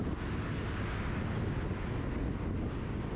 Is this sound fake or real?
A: real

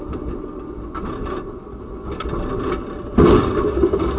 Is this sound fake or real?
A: real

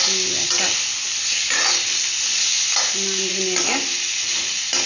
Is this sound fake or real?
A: real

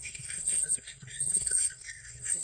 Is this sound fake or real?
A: fake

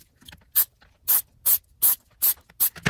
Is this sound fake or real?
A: real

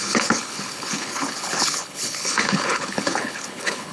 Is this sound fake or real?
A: fake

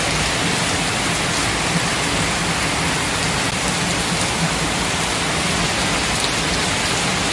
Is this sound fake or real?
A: real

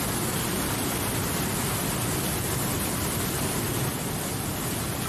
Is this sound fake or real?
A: real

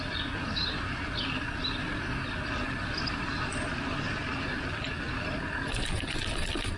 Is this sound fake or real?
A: real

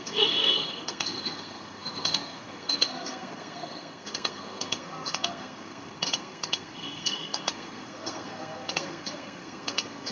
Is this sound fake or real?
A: fake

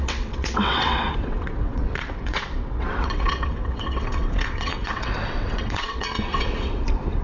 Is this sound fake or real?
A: fake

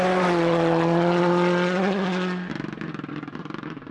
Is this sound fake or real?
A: real